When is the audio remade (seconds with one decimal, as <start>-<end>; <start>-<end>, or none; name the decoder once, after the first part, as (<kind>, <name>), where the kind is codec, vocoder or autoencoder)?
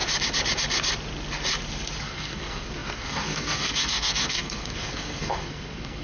2.0-6.0 (codec, SNAC)